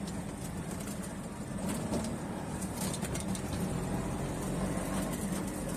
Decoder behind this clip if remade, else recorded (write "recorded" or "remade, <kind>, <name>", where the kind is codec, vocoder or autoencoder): remade, vocoder, BigVGAN v2